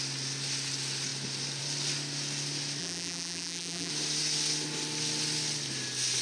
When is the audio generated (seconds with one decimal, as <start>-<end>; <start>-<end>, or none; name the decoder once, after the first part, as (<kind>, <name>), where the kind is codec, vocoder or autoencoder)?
2.8-3.9 (vocoder, BigVGAN v2)